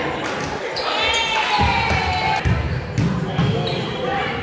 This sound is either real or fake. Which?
real